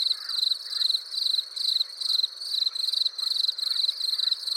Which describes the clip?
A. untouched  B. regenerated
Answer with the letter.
A